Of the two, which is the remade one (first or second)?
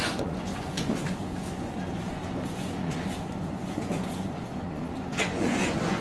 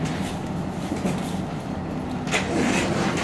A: first